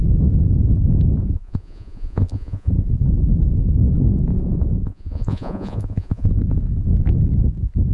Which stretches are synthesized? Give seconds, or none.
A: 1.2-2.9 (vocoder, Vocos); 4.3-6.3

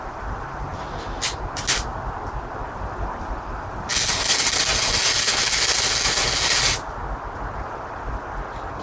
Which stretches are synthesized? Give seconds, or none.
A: none

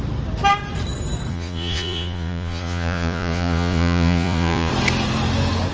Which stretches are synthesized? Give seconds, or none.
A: 1.3-4.7 (vocoder, Vocos)

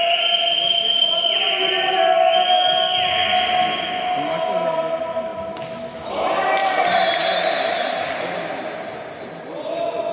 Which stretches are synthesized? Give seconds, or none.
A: 6.6-8.6 (vocoder, BigVGAN v2)